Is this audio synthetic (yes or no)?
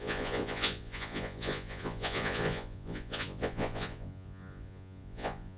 yes